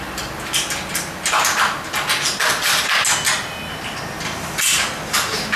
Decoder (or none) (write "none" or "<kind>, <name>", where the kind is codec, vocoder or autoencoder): none